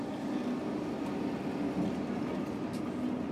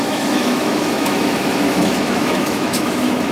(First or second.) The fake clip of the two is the second